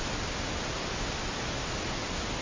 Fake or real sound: real